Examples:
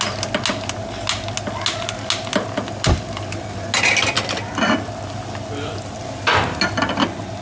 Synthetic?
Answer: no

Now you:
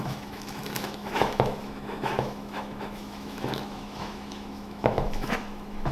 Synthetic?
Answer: yes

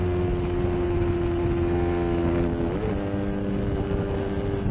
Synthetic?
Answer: no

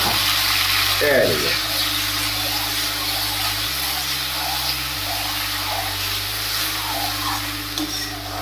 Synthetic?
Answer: no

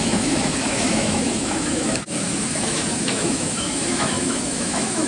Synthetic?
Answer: yes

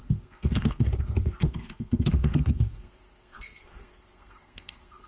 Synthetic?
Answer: yes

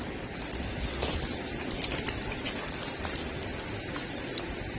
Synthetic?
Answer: no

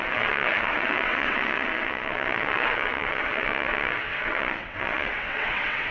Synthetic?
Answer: yes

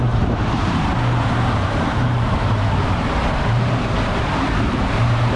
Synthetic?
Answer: yes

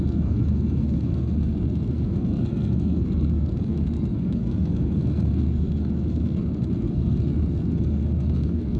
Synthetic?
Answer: yes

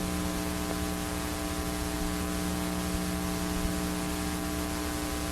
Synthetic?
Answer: no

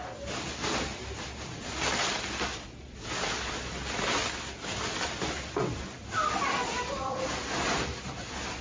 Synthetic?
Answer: no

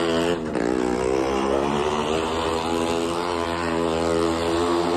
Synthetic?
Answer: no